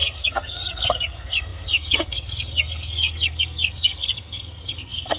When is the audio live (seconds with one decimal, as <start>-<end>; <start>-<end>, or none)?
none

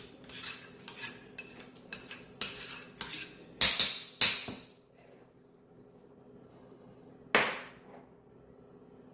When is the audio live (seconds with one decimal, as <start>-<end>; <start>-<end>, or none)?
0.0-6.5; 7.1-9.1

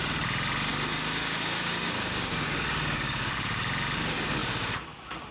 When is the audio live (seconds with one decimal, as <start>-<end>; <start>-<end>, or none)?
0.0-0.7; 3.7-5.3

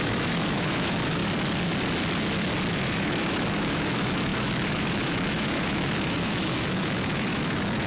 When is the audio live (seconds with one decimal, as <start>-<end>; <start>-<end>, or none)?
1.2-2.7

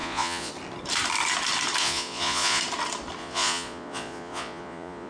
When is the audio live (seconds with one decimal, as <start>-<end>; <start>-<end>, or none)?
0.5-1.8; 2.6-3.2